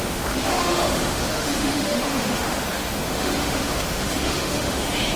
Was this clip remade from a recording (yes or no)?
yes